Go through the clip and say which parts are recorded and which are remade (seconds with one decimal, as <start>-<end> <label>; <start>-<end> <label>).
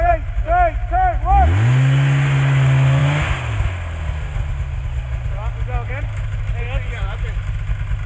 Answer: 0.0-8.1 recorded